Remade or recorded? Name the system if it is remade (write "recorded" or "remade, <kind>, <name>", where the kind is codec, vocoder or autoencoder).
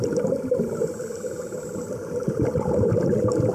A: recorded